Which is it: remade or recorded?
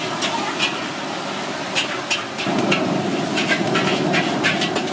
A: recorded